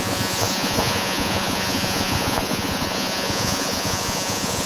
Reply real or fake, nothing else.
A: fake